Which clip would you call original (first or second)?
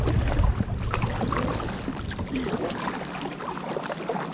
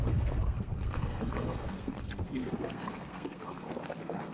first